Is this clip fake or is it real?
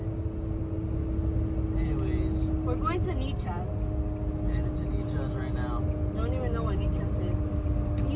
real